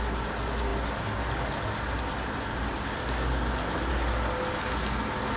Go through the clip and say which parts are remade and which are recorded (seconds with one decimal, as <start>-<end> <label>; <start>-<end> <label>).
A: 0.0-5.4 recorded